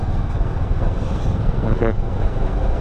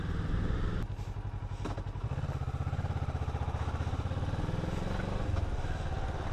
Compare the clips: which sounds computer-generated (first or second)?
first